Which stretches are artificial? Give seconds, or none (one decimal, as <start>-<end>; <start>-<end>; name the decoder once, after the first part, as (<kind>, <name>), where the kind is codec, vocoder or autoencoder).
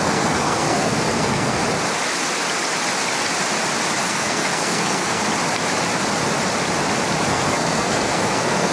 0.0-1.6 (codec, SNAC); 4.0-5.2; 7.3-8.7